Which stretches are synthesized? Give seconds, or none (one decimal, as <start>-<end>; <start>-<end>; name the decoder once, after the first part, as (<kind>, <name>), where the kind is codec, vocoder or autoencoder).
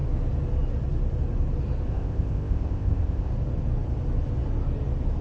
1.9-3.3 (codec, ZipCodec)